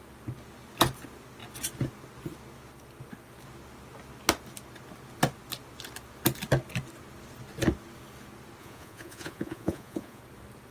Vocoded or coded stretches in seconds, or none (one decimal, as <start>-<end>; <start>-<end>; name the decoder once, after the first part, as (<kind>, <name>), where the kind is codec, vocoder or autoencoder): 8.6-10.2 (vocoder, Vocos)